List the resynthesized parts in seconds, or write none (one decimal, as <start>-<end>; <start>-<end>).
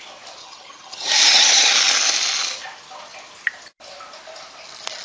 0.4-1.7